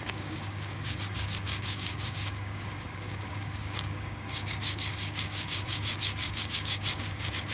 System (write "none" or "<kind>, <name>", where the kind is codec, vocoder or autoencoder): codec, DAC